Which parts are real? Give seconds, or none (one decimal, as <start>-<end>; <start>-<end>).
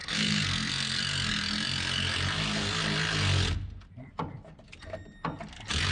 1.0-5.9